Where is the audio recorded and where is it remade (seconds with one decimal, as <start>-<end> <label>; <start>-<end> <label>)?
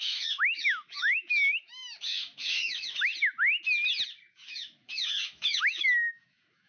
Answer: 0.0-3.1 remade; 3.1-4.3 recorded; 4.3-6.7 remade